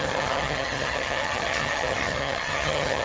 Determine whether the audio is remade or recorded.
remade